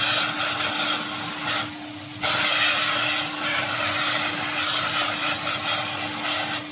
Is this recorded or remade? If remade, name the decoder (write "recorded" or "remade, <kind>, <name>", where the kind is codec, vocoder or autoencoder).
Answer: recorded